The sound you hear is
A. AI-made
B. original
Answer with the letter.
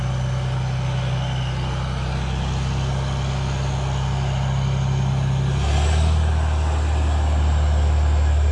B